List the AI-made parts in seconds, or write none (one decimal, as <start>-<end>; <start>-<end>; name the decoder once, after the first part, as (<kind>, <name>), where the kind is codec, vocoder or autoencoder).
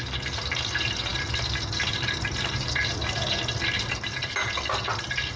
none